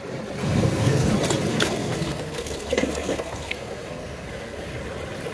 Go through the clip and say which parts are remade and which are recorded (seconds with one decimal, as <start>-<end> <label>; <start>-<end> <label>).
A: 0.0-0.4 recorded; 0.4-1.1 remade; 1.1-1.5 recorded; 1.5-4.7 remade; 4.7-5.3 recorded